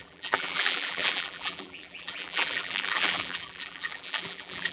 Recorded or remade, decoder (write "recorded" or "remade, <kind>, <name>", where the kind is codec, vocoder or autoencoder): remade, vocoder, BigVGAN v2